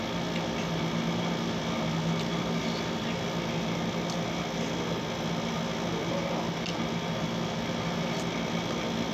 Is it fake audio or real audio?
real